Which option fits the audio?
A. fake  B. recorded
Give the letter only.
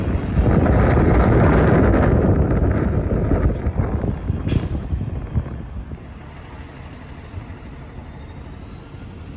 B